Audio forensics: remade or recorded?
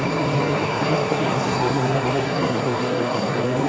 remade